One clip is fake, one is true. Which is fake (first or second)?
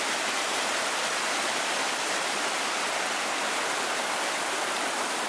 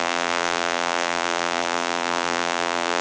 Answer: second